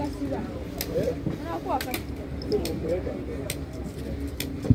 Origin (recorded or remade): recorded